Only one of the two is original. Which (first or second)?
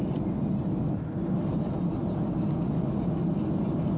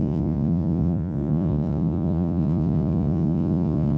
first